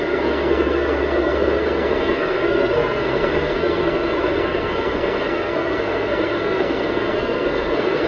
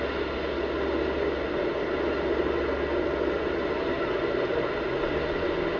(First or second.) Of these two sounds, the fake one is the first